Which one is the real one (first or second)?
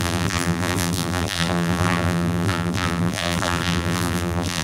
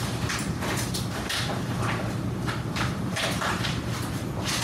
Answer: second